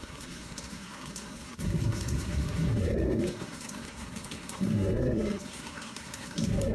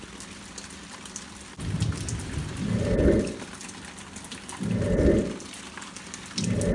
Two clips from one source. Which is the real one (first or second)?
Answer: second